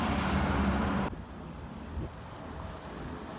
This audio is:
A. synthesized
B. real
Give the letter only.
B